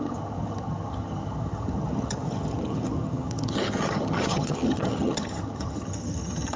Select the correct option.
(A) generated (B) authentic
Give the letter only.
A